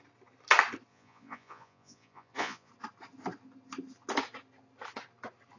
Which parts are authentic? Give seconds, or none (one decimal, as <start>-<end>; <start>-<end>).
0.0-0.9; 2.7-5.6